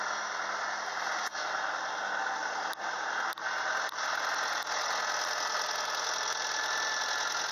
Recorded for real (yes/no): yes